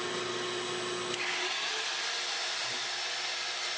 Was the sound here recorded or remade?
recorded